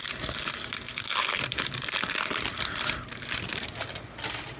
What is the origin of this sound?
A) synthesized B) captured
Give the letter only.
B